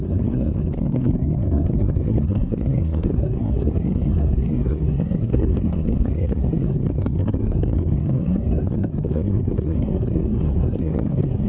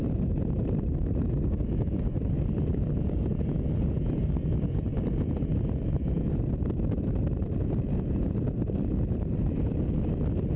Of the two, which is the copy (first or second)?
first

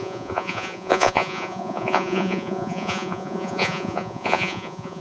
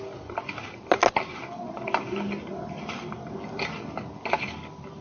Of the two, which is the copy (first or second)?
first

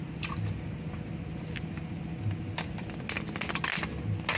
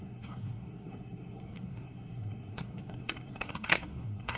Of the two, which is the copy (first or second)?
second